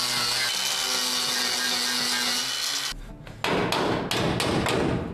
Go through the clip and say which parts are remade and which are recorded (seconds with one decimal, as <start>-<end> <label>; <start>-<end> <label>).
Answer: 0.0-5.1 recorded

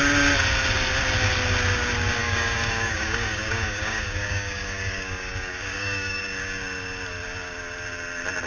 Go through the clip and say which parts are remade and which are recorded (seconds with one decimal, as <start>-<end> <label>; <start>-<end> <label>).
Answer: 0.0-2.2 recorded; 2.2-6.2 remade; 6.2-8.5 recorded

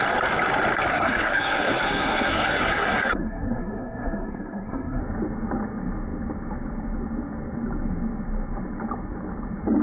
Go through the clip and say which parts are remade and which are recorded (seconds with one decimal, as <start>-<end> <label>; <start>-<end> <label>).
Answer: 0.0-0.9 recorded; 0.9-5.0 remade; 5.0-9.8 recorded